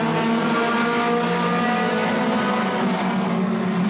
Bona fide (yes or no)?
yes